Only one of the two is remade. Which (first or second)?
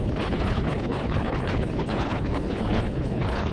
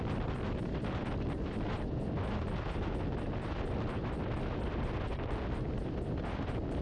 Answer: first